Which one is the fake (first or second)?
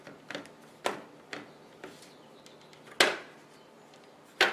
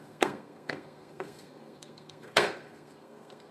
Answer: second